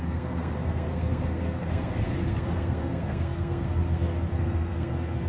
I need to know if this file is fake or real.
fake